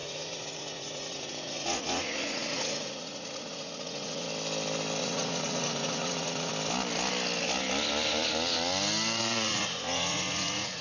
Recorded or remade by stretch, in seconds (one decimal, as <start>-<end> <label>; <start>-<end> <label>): 0.0-4.3 remade; 4.3-5.0 recorded; 5.0-6.5 remade; 6.5-9.2 recorded; 9.2-10.8 remade